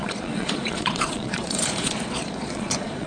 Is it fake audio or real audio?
fake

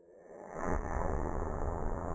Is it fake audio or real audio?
fake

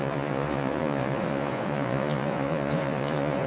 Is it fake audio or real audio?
fake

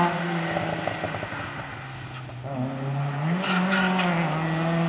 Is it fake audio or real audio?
real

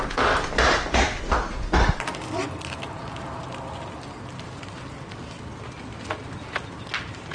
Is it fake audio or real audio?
real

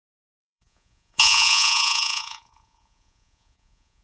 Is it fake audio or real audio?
fake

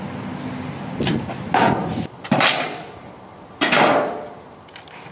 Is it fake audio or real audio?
real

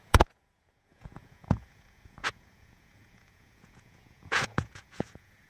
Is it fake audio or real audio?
fake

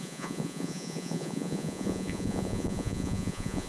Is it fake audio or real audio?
fake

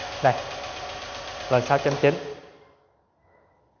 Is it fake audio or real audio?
real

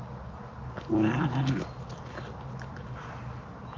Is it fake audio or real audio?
real